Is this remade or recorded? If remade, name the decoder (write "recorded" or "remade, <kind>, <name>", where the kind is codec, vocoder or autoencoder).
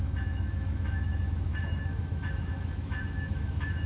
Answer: remade, autoencoder, DAC-VAE